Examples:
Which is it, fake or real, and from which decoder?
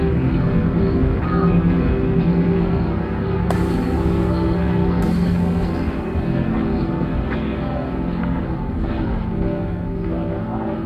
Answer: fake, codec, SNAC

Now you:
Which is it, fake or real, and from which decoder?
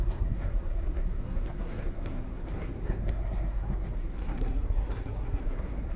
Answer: fake, codec, SNAC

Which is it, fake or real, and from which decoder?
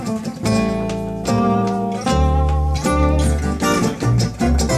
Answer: real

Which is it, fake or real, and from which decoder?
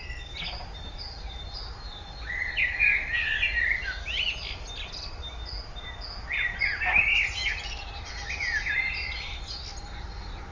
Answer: real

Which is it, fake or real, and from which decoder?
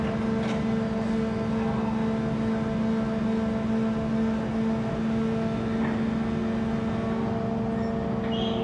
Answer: real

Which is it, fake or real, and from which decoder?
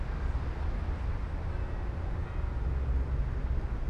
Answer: real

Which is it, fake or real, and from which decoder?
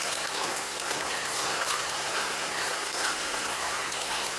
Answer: fake, codec, SNAC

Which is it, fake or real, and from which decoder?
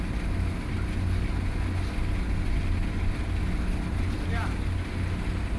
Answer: real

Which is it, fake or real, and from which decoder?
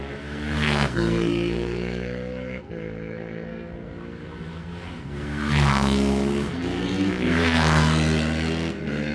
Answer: fake, codec, SNAC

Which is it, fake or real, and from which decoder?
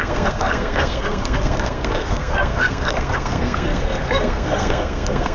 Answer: fake, codec, SNAC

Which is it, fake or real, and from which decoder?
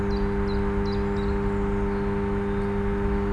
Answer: real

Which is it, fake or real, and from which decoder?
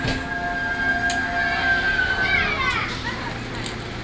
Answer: real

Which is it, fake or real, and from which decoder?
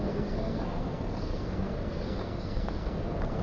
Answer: fake, codec, SNAC